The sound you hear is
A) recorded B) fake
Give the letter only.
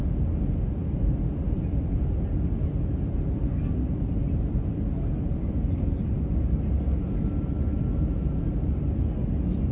A